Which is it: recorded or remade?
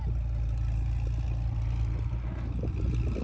recorded